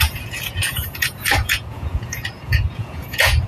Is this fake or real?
fake